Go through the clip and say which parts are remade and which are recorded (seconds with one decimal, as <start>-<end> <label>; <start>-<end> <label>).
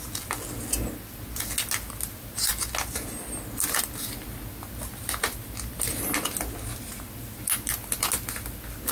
0.0-8.9 recorded